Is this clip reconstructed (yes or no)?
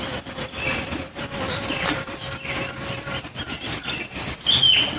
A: no